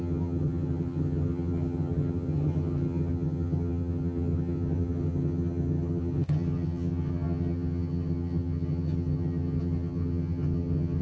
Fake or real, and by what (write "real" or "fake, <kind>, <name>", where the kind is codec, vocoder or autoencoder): fake, vocoder, HiFi-GAN